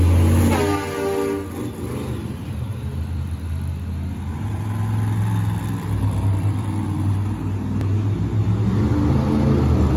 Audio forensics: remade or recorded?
recorded